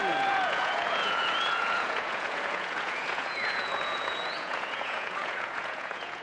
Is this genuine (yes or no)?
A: no